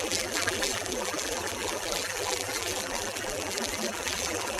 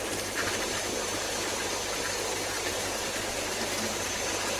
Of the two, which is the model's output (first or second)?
first